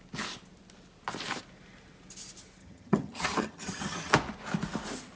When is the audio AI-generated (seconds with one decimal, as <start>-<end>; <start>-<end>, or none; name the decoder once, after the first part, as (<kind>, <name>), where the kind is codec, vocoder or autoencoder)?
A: 2.6-4.1 (vocoder, HiFi-GAN)

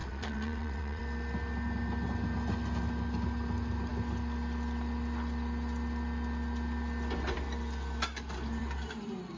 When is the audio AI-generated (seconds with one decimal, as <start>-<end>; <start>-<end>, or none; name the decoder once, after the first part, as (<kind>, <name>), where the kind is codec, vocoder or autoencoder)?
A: 0.0-1.0 (vocoder, WaveNeXt)